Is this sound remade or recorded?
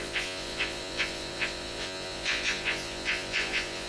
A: remade